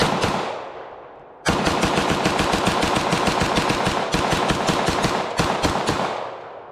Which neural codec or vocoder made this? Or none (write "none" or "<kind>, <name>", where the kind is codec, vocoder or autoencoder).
none